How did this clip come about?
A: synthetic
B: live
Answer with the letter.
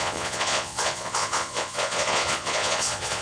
A